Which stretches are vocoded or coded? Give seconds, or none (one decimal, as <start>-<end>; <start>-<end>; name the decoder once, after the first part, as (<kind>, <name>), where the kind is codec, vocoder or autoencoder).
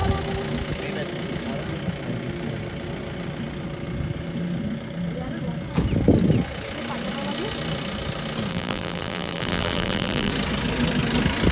8.5-10.3 (vocoder, BigVGAN v2)